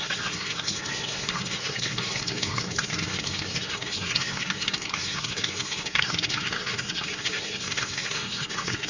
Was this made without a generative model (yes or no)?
no